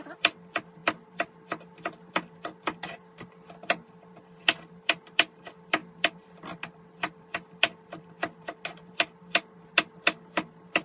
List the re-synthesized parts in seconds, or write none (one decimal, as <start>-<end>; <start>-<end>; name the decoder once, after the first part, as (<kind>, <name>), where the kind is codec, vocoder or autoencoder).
none